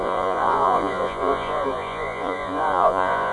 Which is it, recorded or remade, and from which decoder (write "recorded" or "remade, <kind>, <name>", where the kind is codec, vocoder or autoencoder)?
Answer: remade, vocoder, Vocos